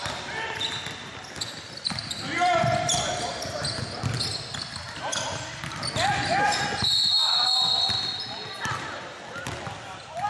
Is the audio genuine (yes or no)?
yes